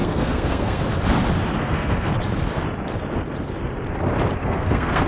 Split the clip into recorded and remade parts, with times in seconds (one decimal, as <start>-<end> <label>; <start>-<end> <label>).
0.0-0.8 remade; 0.8-1.6 recorded; 1.6-2.1 remade; 2.1-4.4 recorded; 4.4-5.1 remade